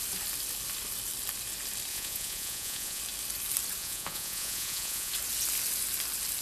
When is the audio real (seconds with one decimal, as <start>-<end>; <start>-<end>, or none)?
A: 0.0-1.9; 3.0-3.8; 5.1-6.4